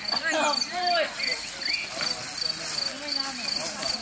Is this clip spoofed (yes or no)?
no